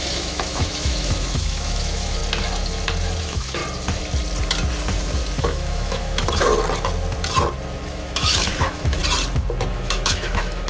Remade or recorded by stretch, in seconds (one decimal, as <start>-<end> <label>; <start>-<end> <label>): 0.0-2.2 remade; 2.2-3.2 recorded; 3.2-3.6 remade; 3.6-5.4 recorded; 5.4-6.5 remade; 6.5-7.9 recorded; 7.9-9.0 remade; 9.0-9.7 recorded; 9.7-10.7 remade